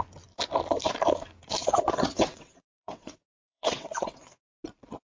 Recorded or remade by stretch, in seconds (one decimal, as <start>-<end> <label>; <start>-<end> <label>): 0.0-1.6 recorded; 1.6-4.4 remade; 4.4-5.1 recorded